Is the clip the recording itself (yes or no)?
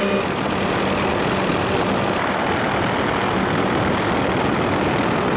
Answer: yes